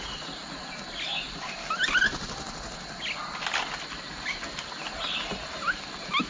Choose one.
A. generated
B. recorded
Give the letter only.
B